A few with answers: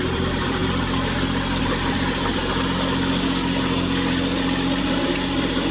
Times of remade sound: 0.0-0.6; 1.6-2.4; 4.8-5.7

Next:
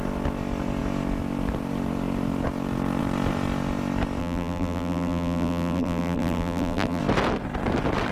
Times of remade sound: 4.2-7.0

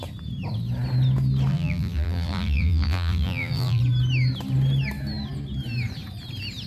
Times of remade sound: 1.5-3.8

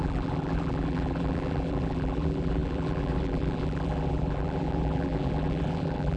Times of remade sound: 0.0-6.2

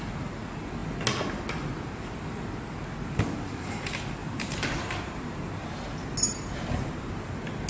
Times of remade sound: 4.2-5.5

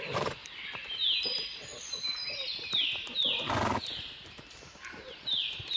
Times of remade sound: 0.0-1.7; 5.2-5.8

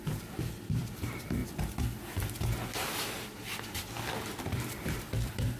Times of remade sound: 0.0-1.4; 4.4-5.6

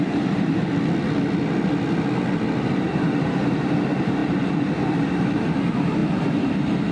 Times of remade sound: 0.0-0.7; 2.7-6.9